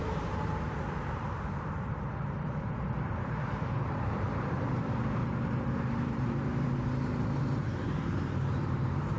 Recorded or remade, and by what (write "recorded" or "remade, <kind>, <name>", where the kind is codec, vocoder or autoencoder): remade, vocoder, BigVGAN v2